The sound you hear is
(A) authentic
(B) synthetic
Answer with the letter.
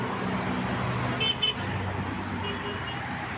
A